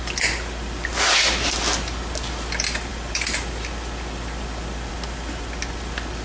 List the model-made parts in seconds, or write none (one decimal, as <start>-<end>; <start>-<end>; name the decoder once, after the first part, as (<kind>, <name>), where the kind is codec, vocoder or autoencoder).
none